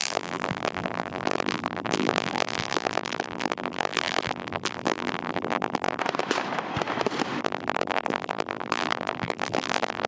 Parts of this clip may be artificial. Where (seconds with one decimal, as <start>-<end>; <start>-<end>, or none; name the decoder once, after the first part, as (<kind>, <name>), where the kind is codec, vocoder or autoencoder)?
0.0-6.0 (vocoder, BigVGAN v2); 7.4-10.1